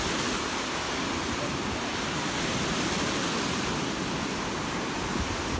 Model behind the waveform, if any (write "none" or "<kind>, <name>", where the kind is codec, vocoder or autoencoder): none